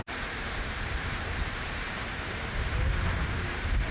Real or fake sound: fake